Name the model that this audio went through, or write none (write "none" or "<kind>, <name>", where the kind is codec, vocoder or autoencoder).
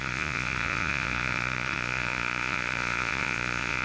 vocoder, Vocos